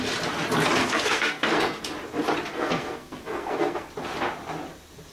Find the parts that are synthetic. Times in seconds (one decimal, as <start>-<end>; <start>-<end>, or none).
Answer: 0.8-1.8; 2.5-3.9